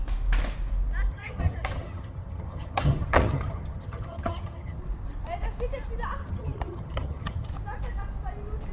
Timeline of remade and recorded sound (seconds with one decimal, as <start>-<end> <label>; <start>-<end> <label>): 0.0-1.1 recorded; 1.1-4.8 remade; 4.8-6.2 recorded; 6.2-7.5 remade; 7.5-8.7 recorded